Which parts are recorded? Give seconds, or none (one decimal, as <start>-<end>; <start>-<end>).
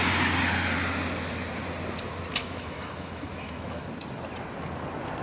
0.0-2.4; 3.8-5.2